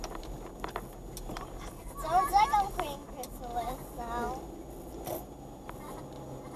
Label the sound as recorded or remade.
recorded